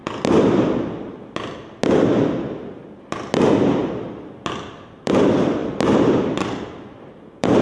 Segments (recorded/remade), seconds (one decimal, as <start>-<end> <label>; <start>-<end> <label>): 0.0-4.5 recorded; 4.5-5.6 remade; 5.6-6.1 recorded; 6.1-7.6 remade